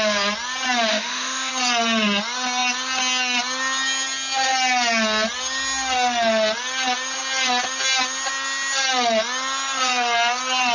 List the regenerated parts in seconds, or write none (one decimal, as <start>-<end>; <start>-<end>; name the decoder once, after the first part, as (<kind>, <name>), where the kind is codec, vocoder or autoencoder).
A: 0.9-1.5 (autoencoder, DAC-VAE)